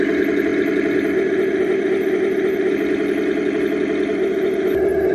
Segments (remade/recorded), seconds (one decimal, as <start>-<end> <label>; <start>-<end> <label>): 0.0-5.1 recorded